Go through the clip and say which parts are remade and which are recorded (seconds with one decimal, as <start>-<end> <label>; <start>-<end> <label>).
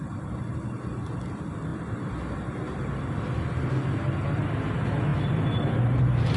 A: 0.0-6.4 recorded